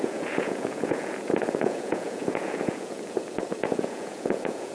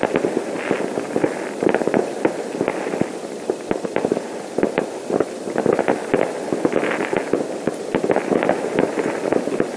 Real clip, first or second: second